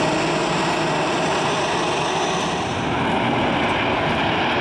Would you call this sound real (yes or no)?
yes